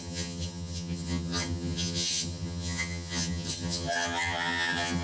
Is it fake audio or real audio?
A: fake